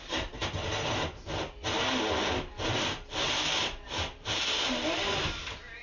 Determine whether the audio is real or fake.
real